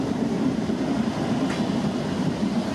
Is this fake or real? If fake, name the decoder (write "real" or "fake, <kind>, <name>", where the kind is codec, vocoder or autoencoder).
real